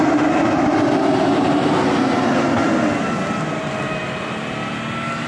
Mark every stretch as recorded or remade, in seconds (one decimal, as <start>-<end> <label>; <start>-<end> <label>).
0.0-5.3 recorded